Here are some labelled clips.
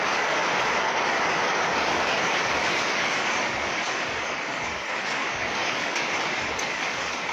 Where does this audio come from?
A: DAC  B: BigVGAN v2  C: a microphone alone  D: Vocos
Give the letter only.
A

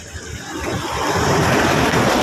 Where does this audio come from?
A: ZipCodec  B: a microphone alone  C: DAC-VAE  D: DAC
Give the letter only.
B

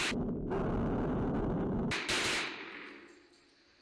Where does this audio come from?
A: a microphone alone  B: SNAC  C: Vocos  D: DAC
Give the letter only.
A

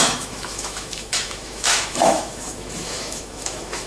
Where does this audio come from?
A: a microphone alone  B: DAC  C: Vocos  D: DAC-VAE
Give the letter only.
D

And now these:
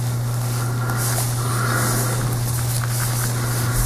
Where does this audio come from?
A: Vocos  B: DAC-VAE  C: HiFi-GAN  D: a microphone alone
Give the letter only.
D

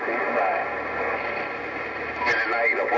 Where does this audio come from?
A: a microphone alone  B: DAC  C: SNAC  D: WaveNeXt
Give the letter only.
A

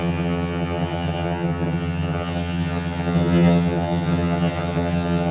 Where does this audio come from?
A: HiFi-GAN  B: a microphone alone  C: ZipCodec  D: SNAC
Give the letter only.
A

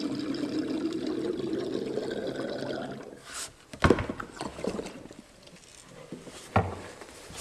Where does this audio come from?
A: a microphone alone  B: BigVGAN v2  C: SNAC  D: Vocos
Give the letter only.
A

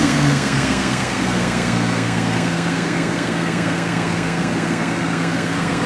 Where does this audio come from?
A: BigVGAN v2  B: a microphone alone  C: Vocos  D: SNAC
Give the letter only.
D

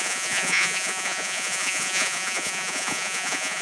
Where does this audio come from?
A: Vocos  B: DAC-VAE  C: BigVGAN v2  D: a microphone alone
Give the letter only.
A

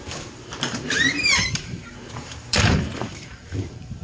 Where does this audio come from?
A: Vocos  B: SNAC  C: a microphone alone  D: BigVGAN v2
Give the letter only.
D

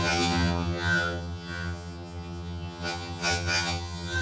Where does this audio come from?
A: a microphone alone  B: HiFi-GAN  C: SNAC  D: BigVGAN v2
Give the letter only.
B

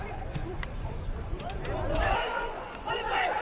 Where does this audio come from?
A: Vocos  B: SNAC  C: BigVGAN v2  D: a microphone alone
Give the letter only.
A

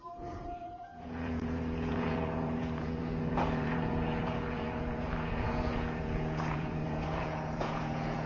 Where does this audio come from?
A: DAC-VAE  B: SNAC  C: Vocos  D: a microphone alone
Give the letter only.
C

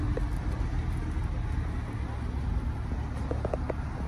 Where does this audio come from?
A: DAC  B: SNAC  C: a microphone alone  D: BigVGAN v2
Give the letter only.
C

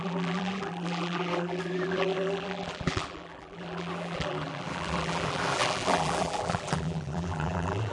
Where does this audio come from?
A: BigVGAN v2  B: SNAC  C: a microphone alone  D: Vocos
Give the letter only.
A